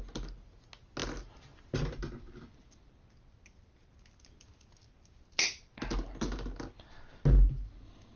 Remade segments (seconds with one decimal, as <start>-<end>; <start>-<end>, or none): none